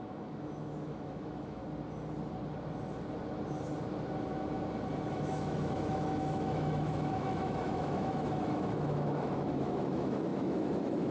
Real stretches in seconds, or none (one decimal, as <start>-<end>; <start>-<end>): 1.6-5.1